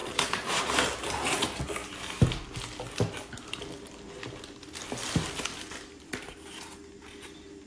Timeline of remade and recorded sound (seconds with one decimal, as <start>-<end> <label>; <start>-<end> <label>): 0.0-0.6 remade; 0.6-7.7 recorded